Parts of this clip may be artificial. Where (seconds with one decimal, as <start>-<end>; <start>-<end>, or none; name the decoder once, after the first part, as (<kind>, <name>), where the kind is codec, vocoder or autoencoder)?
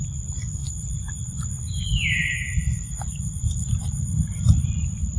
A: 0.0-5.2 (vocoder, BigVGAN v2)